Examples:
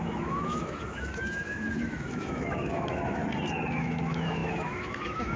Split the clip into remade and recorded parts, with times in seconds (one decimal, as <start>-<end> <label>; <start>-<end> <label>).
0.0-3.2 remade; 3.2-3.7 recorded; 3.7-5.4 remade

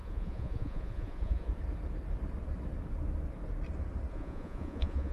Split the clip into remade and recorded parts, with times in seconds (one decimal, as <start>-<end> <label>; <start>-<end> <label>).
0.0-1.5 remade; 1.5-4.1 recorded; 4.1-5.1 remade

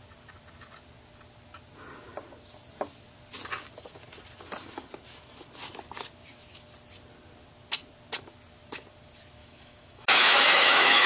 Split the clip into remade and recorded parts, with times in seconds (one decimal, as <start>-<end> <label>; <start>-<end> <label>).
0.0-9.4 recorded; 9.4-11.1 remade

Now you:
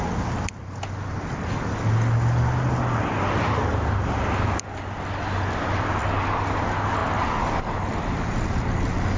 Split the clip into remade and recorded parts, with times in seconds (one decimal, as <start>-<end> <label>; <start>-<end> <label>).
0.0-9.2 recorded